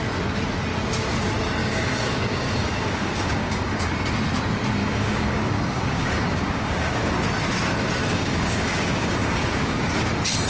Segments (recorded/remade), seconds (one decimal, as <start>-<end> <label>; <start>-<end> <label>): 0.0-1.6 recorded; 1.6-3.9 remade; 3.9-4.8 recorded; 4.8-7.1 remade; 7.1-8.0 recorded; 8.0-9.9 remade; 9.9-10.5 recorded